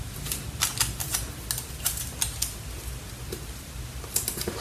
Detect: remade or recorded recorded